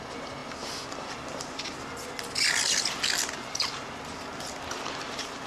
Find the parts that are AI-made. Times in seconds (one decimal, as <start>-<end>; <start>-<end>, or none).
none